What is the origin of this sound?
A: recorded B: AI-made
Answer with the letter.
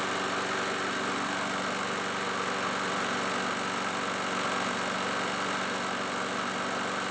A